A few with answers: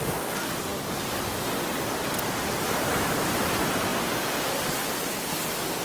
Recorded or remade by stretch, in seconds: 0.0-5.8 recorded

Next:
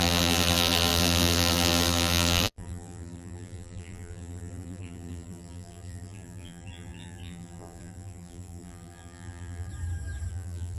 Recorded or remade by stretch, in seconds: 0.0-9.7 remade; 9.7-10.3 recorded; 10.3-10.8 remade

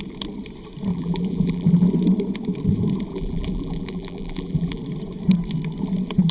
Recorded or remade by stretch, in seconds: 0.0-0.9 recorded; 0.9-1.9 remade; 1.9-3.1 recorded; 3.1-4.8 remade; 4.8-6.3 recorded

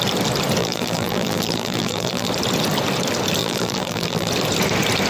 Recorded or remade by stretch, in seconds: 0.0-0.6 recorded; 0.6-2.3 remade; 2.3-3.4 recorded; 3.4-4.3 remade; 4.3-5.1 recorded

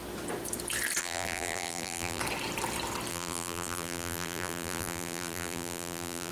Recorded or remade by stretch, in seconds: 0.0-1.0 recorded; 1.0-2.2 remade; 2.2-3.1 recorded; 3.1-6.3 remade

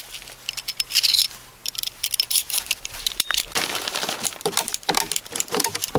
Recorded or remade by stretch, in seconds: 0.0-1.6 recorded; 1.6-4.9 remade; 4.9-6.0 recorded